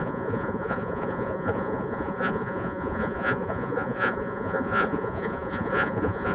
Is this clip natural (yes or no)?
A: no